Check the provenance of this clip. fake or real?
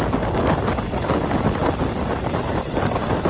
real